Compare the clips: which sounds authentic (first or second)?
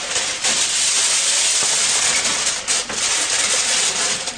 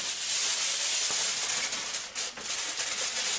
second